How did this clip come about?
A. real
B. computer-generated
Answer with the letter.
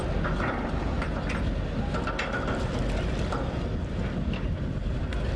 A